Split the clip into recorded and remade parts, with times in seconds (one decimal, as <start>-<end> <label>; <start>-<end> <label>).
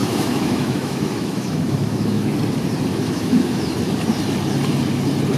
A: 0.0-2.3 remade; 2.3-2.9 recorded; 2.9-3.7 remade; 3.7-5.4 recorded